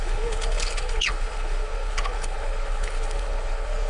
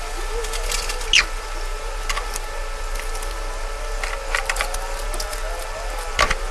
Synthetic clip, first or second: first